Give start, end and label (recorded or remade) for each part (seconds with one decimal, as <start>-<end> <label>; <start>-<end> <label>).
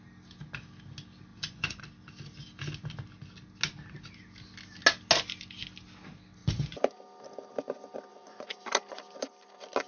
0.0-1.3 recorded; 1.3-1.8 remade; 1.8-6.4 recorded; 6.4-7.0 remade; 7.0-8.1 recorded; 8.1-8.6 remade; 8.6-9.9 recorded